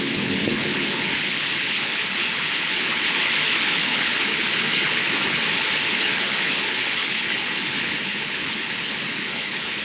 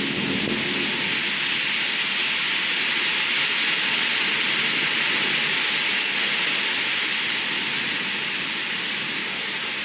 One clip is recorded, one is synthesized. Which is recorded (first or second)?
second